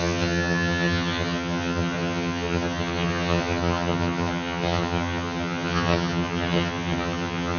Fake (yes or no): yes